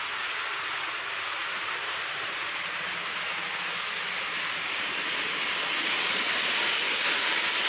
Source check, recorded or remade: recorded